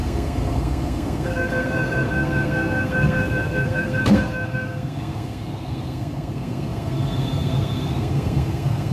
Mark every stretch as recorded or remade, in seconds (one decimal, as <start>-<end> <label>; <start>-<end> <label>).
0.0-8.9 remade